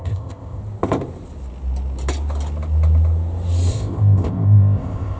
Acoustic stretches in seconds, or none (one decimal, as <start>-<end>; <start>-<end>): 0.6-3.7